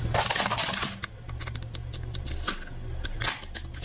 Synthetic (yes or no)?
no